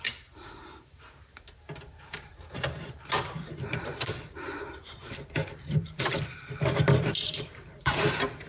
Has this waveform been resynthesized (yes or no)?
yes